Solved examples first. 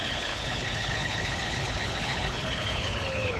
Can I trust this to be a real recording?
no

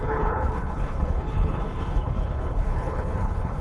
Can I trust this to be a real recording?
no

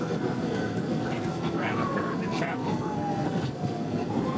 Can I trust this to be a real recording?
no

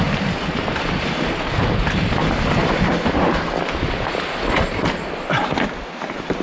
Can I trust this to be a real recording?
yes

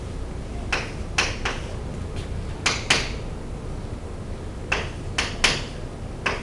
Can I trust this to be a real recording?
yes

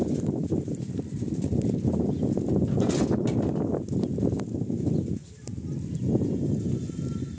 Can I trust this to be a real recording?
yes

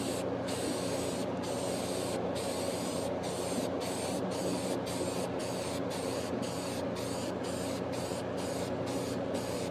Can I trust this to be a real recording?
yes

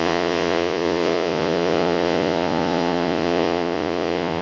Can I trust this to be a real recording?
no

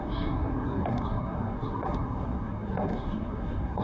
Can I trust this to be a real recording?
no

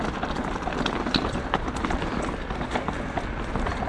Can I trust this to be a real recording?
yes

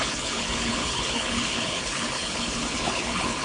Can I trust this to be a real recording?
no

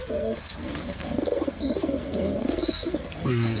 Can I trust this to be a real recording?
no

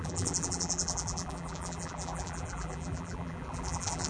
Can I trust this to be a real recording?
no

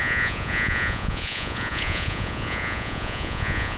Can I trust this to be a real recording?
no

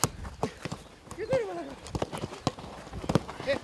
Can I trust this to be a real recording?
yes